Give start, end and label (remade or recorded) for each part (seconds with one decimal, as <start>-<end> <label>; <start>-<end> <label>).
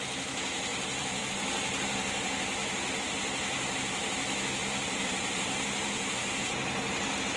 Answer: 0.0-0.7 recorded; 0.7-1.3 remade; 1.3-2.6 recorded; 2.6-3.1 remade; 3.1-4.6 recorded; 4.6-6.5 remade; 6.5-7.4 recorded